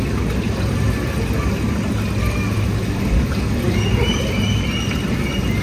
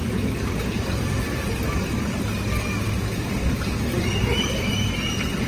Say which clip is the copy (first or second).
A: second